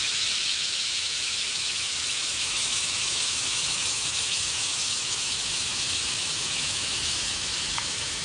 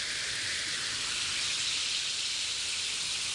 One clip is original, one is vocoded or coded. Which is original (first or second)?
second